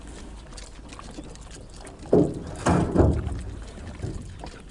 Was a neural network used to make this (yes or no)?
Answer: no